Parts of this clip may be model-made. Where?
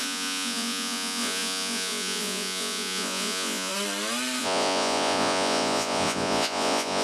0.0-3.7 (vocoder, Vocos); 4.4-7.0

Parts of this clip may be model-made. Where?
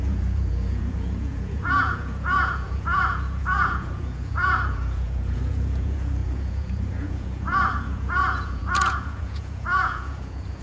0.0-10.6 (vocoder, Vocos)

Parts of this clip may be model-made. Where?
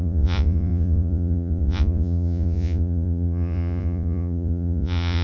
0.0-5.2 (vocoder, Vocos)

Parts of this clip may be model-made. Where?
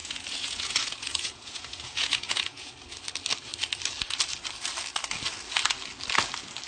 0.0-2.7 (vocoder, Vocos)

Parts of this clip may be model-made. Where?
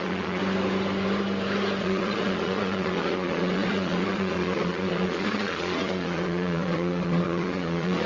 0.0-0.4 (vocoder, Vocos); 1.8-8.1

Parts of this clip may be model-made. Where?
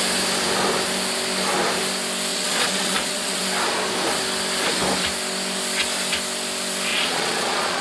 2.3-3.4 (vocoder, Vocos); 6.9-7.8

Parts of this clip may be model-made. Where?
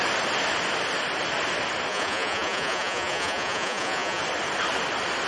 1.9-4.2 (vocoder, Vocos)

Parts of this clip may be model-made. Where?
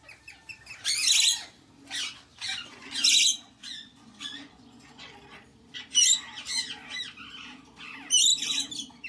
2.3-2.9 (vocoder, Vocos); 3.3-5.1